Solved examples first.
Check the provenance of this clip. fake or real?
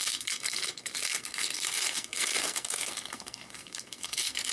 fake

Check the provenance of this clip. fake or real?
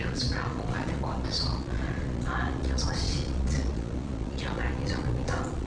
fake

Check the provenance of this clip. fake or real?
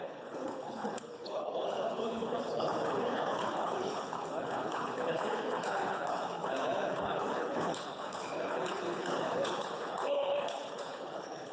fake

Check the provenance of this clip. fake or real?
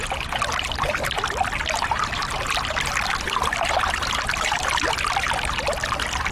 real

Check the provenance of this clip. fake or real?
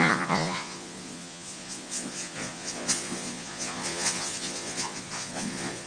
fake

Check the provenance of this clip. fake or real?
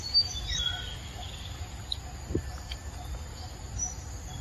real